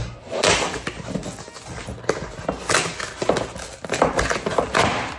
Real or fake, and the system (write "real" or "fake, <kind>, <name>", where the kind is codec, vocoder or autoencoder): real